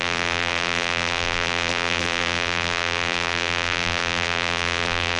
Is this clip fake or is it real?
fake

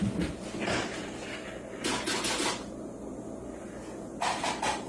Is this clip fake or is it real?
real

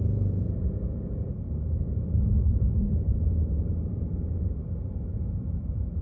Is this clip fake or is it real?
fake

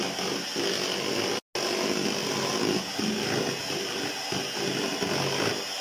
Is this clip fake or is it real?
real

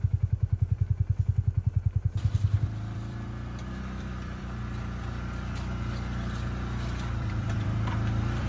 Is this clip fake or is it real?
fake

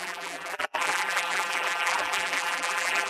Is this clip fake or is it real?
fake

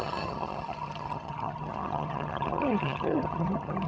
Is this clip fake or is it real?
fake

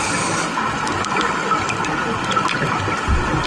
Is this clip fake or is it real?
real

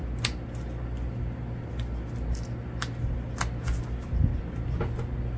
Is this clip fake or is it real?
real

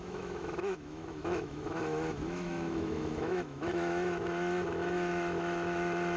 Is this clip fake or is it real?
fake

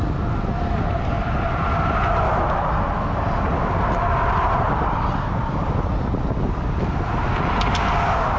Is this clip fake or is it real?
real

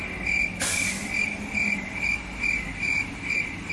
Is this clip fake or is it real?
real